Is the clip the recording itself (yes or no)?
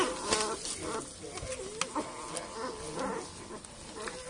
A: yes